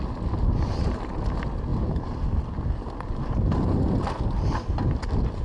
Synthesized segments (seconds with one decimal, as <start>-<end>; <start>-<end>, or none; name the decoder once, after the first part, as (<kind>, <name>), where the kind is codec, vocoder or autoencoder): none